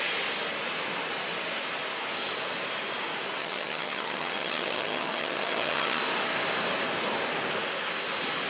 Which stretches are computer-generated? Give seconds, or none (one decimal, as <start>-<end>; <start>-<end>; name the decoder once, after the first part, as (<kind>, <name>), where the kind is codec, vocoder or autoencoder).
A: 3.4-6.0 (vocoder, HiFi-GAN)